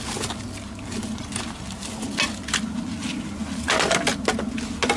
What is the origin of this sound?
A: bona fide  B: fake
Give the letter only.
A